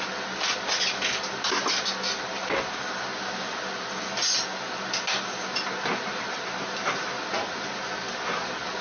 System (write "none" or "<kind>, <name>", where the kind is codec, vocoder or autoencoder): none